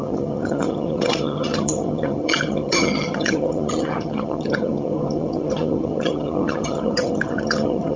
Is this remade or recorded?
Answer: remade